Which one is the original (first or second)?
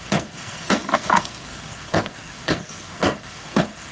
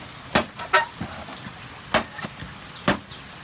second